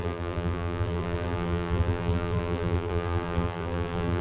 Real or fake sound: fake